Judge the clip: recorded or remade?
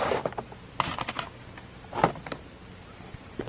recorded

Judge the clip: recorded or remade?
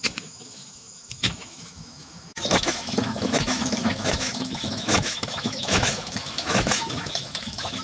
remade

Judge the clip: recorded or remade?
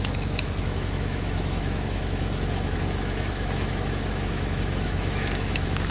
remade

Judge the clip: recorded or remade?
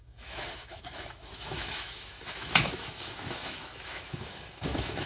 remade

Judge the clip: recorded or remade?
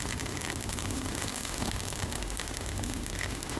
remade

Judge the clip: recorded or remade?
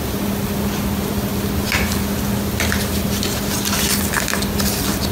recorded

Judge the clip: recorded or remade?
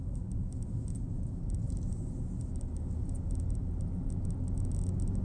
recorded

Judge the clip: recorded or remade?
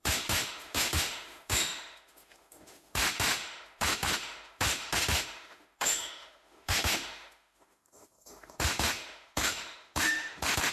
remade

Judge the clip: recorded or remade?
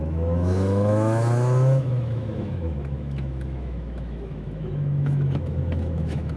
remade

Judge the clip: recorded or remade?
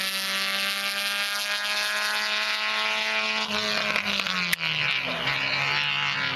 recorded